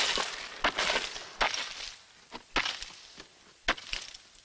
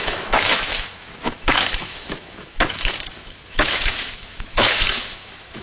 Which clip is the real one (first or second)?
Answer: first